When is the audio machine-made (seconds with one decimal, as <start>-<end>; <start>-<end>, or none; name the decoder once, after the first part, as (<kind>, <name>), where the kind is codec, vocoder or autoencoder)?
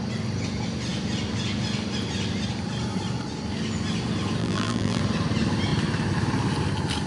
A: 4.4-5.0 (vocoder, BigVGAN v2)